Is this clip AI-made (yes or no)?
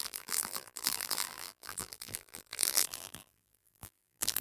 yes